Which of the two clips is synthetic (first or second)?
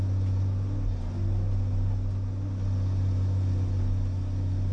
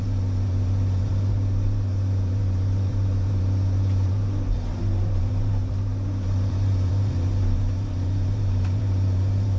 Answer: second